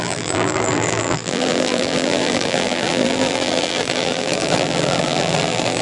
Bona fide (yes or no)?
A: no